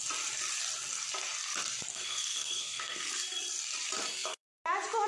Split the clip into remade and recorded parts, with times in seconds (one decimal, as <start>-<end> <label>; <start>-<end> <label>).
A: 0.0-1.9 recorded; 1.9-3.1 remade; 3.1-4.1 recorded; 4.1-4.6 remade; 4.6-5.1 recorded